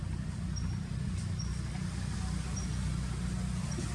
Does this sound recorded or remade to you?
recorded